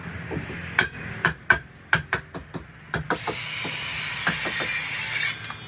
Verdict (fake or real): real